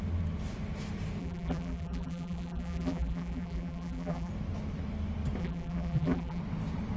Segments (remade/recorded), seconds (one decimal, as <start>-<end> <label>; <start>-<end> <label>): 0.0-1.2 recorded; 1.2-4.3 remade; 4.3-5.4 recorded; 5.4-6.4 remade; 6.4-7.0 recorded